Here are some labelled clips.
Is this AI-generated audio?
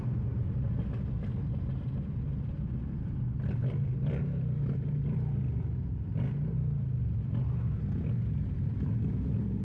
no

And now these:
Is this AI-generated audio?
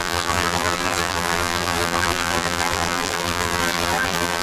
yes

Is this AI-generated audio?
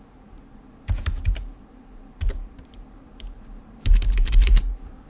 yes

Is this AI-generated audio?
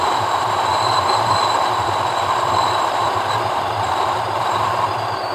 yes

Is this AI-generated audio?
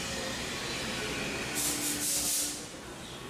no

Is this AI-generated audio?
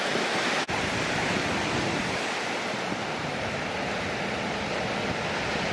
yes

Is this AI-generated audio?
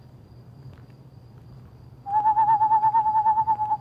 yes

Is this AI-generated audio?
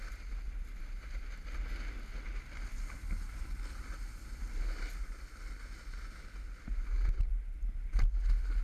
no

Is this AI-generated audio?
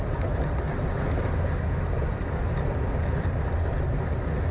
no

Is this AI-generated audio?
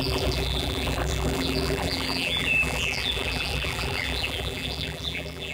yes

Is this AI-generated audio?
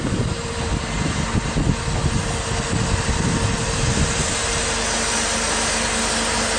no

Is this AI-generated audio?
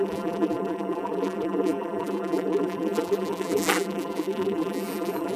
yes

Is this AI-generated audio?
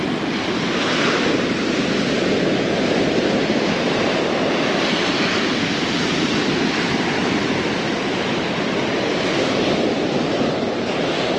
yes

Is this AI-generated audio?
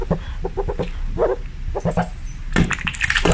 yes